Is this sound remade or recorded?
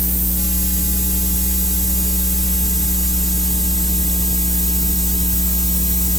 recorded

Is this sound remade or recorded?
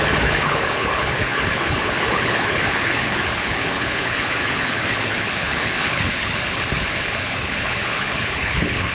remade